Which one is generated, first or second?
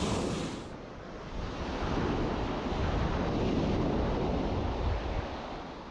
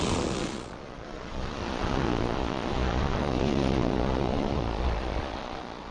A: second